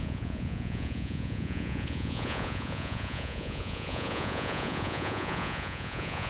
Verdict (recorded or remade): remade